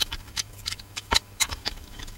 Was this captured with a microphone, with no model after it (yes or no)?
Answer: no